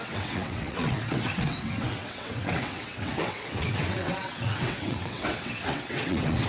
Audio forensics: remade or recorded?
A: remade